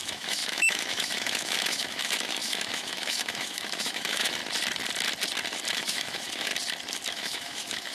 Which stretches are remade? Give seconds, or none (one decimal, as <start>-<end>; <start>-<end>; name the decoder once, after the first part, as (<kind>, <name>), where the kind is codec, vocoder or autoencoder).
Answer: 0.0-4.4 (autoencoder, DAC-VAE); 5.7-6.5; 7.1-7.9